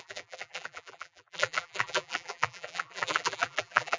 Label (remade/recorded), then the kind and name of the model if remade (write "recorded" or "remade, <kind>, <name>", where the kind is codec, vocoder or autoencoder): remade, vocoder, BigVGAN v2